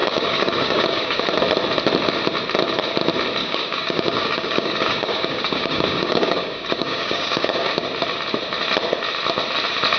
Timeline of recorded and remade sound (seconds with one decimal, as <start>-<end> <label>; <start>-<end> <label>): 0.0-1.2 remade; 1.2-3.4 recorded; 3.4-7.7 remade; 7.7-10.0 recorded